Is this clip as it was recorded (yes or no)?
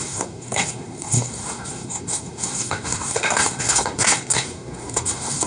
no